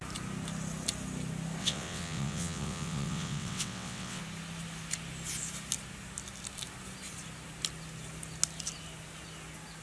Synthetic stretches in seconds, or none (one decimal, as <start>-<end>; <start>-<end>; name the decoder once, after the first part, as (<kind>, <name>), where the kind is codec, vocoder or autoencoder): 1.6-4.2 (vocoder, WaveNeXt)

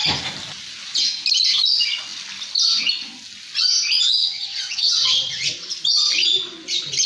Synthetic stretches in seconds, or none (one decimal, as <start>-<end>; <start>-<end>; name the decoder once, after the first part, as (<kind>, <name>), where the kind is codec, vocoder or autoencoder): 4.2-5.7 (vocoder, WaveNeXt)

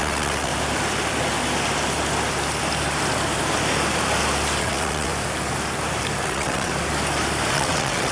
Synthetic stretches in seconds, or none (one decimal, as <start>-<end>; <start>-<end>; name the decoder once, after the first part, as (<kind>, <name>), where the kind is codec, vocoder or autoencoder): 0.0-0.5 (vocoder, WaveNeXt); 4.6-5.1; 6.2-6.7; 7.5-8.1

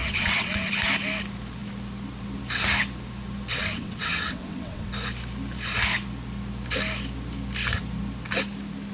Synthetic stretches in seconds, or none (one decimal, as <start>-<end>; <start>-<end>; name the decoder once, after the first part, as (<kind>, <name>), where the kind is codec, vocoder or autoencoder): 0.0-0.7 (vocoder, WaveNeXt); 3.6-4.9

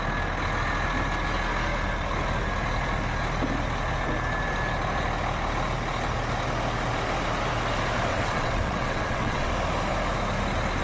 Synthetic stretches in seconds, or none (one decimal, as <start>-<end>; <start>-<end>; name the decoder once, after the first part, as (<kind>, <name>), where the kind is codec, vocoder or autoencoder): 8.1-9.5 (vocoder, WaveNeXt)

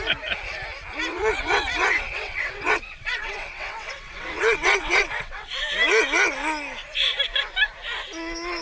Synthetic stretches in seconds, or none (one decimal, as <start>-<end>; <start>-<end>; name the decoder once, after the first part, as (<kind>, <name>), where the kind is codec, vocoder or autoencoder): 1.1-5.5 (vocoder, WaveNeXt)

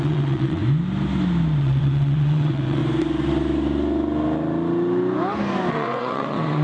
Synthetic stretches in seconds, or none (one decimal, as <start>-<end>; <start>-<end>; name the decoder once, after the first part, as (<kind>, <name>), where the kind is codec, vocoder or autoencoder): 0.0-0.6 (vocoder, WaveNeXt); 1.6-2.8; 5.7-6.6